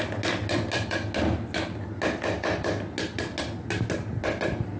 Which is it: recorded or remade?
recorded